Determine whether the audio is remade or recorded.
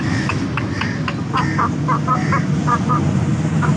recorded